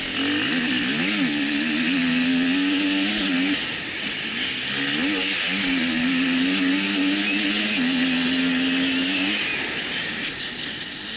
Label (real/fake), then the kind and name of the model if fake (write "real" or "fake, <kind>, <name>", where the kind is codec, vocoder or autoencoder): real